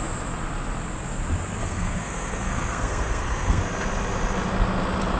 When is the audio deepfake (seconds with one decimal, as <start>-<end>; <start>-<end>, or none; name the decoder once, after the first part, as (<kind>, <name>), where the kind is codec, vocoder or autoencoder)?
1.6-3.6 (codec, SNAC)